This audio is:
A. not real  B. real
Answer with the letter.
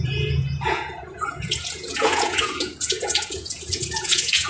A